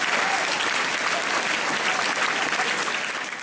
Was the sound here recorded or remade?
recorded